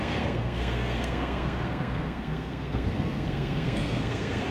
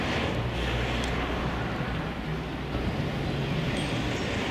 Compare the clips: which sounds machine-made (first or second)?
first